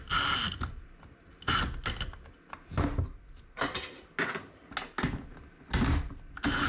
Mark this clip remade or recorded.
recorded